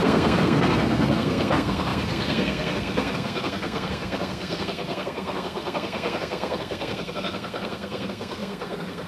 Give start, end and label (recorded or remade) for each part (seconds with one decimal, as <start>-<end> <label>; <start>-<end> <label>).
0.0-9.1 remade